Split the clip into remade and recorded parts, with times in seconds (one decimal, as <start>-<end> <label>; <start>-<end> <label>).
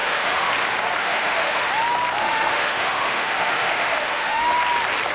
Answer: 0.0-0.5 remade; 0.5-1.0 recorded; 1.0-1.7 remade; 1.7-2.2 recorded; 2.2-4.6 remade; 4.6-5.1 recorded